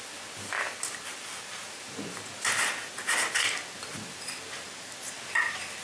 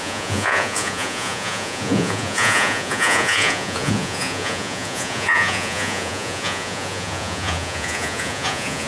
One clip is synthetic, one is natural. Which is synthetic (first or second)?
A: second